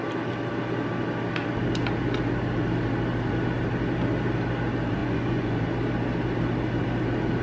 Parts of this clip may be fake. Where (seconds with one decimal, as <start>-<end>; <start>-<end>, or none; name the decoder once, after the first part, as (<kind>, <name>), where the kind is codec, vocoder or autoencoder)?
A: 5.0-5.6 (vocoder, Vocos)